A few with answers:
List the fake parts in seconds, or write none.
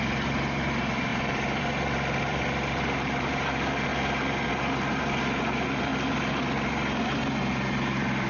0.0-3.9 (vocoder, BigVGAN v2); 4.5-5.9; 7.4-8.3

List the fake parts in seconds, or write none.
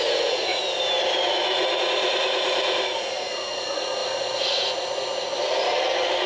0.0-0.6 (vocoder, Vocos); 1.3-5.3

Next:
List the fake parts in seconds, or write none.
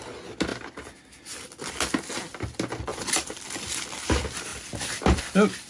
2.9-3.8 (vocoder, BigVGAN v2); 4.5-5.2